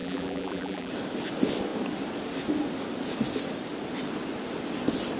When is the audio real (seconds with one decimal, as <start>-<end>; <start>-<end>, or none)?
0.9-5.2